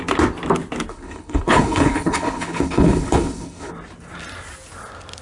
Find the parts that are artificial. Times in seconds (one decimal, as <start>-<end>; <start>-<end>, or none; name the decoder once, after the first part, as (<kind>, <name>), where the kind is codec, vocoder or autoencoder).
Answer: 0.9-3.7 (codec, HILCodec)